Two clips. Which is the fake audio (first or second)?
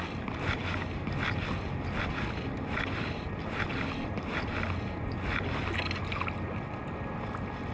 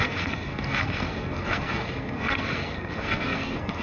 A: second